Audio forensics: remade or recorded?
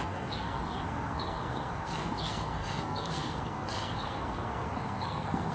remade